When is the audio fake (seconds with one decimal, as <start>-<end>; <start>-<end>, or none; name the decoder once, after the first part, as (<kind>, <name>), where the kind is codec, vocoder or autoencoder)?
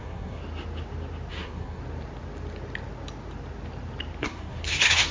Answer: 0.0-0.4 (codec, SNAC); 1.3-1.8; 4.2-5.1